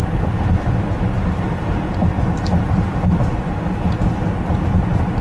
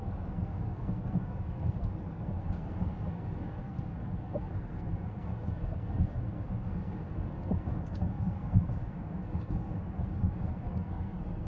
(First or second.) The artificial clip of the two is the second